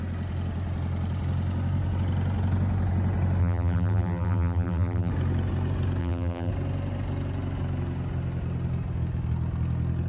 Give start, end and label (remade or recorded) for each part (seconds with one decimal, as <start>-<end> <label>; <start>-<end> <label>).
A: 0.0-3.4 recorded; 3.4-5.1 remade; 5.1-6.0 recorded; 6.0-6.5 remade; 6.5-10.1 recorded